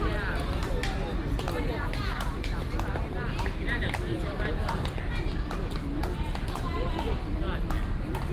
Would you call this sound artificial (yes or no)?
no